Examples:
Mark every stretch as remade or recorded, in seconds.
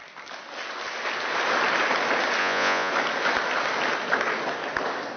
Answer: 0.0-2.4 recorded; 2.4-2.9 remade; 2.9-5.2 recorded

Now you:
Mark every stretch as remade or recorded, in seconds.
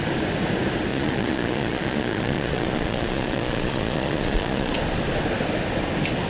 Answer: 0.0-0.9 recorded; 0.9-4.7 remade; 4.7-6.3 recorded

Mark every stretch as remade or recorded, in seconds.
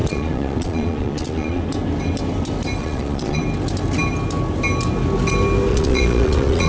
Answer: 0.0-1.6 remade; 1.6-2.8 recorded; 2.8-3.4 remade; 3.4-5.7 recorded; 5.7-6.7 remade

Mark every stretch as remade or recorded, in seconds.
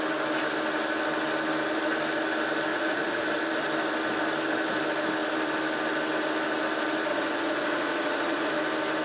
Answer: 0.0-2.7 recorded; 2.7-3.3 remade; 3.3-7.1 recorded; 7.1-8.5 remade; 8.5-9.0 recorded